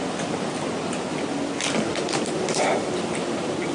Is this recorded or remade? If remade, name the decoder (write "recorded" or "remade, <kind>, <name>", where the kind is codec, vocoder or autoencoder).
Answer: recorded